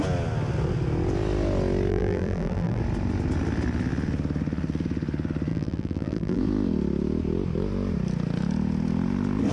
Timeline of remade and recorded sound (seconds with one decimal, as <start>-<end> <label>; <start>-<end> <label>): 0.0-1.9 recorded; 1.9-2.8 remade; 2.8-5.5 recorded; 5.5-6.4 remade; 6.4-9.5 recorded